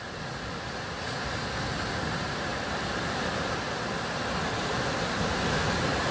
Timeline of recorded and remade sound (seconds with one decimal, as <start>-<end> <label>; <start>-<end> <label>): 0.0-6.1 recorded

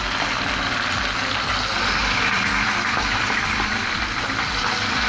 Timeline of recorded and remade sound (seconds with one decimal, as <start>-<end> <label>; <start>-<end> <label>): 0.0-2.0 recorded; 2.0-5.1 remade